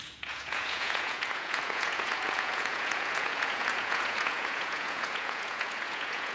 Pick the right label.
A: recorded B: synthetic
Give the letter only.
B